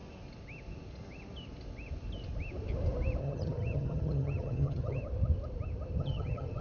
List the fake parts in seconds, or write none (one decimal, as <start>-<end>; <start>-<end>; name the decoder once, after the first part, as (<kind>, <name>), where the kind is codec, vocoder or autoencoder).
3.2-5.0 (vocoder, HiFi-GAN); 6.0-6.6